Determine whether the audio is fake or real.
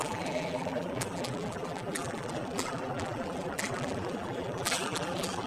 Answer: fake